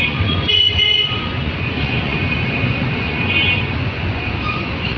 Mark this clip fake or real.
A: fake